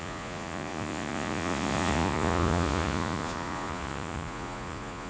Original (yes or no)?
no